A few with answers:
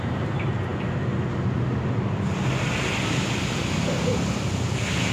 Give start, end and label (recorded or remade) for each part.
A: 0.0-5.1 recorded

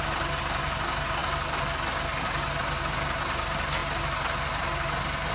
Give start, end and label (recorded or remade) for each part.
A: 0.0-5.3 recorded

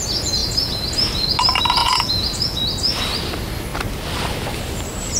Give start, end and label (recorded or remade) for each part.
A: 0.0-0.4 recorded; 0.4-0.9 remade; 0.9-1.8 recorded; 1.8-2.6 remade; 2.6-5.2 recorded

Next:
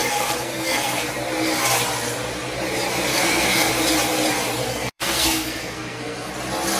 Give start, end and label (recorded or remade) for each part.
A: 0.0-1.1 remade; 1.1-3.1 recorded; 3.1-3.7 remade; 3.7-4.7 recorded; 4.7-6.3 remade; 6.3-6.8 recorded

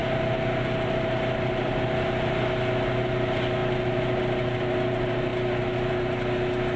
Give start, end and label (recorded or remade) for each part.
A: 0.0-6.8 recorded

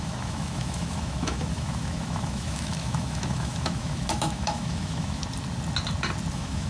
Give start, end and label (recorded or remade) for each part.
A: 0.0-5.2 remade; 5.2-6.3 recorded; 6.3-6.7 remade

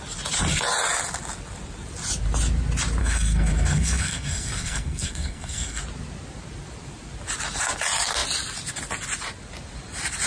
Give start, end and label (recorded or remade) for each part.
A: 0.0-3.0 recorded; 3.0-5.8 remade; 5.8-10.3 recorded